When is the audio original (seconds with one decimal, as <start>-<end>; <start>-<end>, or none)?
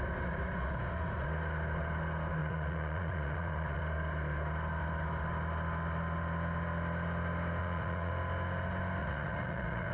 0.0-2.4; 3.8-7.6; 8.1-9.0